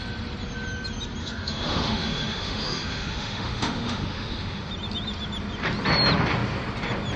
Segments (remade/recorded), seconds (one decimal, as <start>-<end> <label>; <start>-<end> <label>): 0.0-1.2 recorded; 1.2-4.7 remade; 4.7-7.2 recorded